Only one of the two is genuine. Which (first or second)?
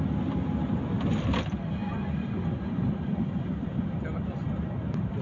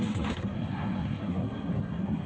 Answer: first